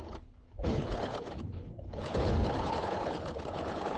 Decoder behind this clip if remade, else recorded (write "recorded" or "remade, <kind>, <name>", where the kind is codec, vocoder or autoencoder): remade, codec, HILCodec